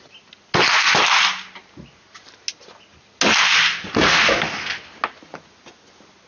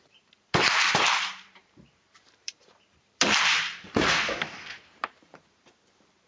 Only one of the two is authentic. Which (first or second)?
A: first